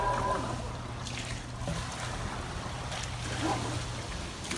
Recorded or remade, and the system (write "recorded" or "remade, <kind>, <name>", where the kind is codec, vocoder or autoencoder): recorded